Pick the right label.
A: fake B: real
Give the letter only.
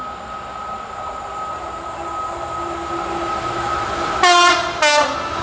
B